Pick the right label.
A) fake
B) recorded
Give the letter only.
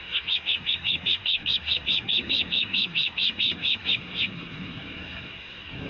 A